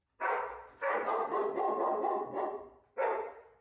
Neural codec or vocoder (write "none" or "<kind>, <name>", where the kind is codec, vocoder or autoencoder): none